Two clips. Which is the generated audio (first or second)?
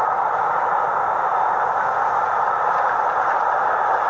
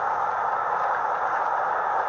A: first